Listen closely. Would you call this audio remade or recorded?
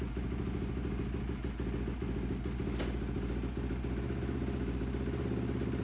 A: recorded